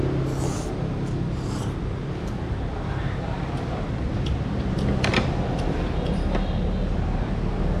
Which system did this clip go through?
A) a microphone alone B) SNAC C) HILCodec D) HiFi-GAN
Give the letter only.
A